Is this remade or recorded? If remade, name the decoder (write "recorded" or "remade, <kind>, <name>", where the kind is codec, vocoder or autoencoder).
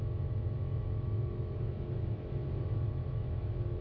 remade, autoencoder, DAC-VAE